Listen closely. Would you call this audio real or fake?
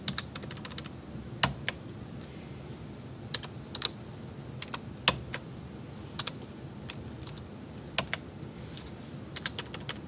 real